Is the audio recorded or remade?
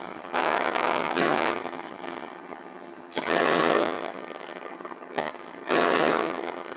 remade